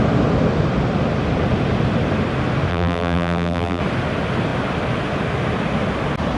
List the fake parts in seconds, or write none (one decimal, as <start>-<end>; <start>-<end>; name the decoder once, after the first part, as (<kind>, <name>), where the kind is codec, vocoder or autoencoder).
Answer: 2.7-3.8 (vocoder, BigVGAN v2)